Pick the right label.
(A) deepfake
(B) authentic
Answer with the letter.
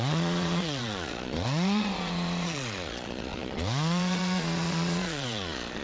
A